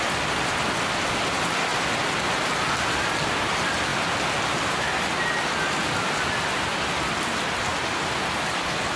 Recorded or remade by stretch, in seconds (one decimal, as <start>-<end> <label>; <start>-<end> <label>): 0.0-9.0 recorded